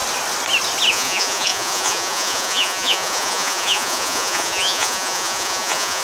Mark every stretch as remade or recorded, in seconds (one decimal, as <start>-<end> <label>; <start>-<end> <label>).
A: 0.0-0.9 recorded; 0.9-6.0 remade